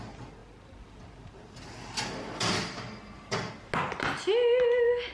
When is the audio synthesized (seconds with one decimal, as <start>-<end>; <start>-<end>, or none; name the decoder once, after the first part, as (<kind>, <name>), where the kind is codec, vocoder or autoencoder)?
none